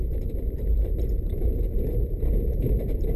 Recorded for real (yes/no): no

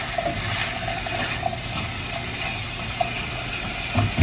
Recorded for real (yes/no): yes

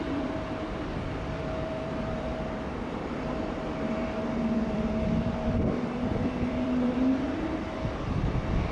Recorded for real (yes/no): no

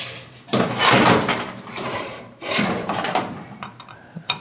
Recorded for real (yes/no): no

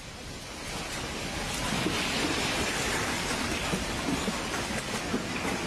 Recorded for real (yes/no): no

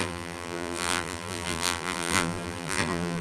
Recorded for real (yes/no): no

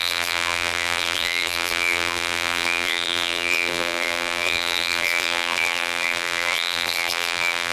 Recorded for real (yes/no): no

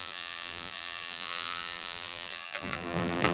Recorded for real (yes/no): no